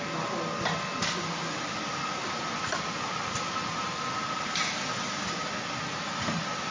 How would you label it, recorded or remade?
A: recorded